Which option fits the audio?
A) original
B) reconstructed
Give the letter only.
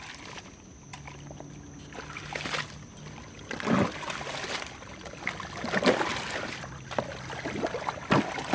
A